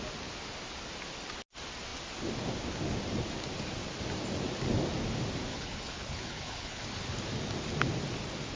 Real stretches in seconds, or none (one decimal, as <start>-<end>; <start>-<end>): 0.0-5.5; 6.8-8.6